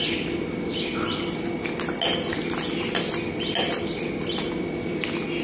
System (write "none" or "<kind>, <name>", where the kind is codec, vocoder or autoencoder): none